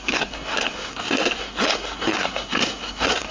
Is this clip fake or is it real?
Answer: fake